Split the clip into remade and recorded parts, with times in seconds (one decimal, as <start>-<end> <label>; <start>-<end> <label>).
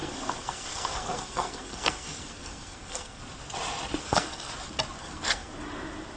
0.0-3.2 remade; 3.2-4.0 recorded; 4.0-4.5 remade; 4.5-5.0 recorded; 5.0-5.5 remade; 5.5-6.2 recorded